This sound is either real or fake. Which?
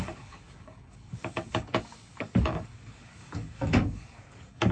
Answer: fake